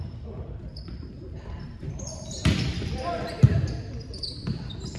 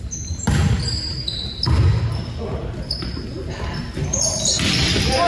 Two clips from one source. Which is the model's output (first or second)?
first